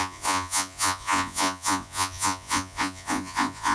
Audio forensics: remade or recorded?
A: remade